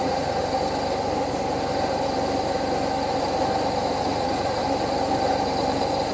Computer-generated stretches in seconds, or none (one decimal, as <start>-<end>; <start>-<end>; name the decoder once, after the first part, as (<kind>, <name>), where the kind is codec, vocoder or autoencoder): 0.0-0.4 (vocoder, Vocos); 4.0-4.6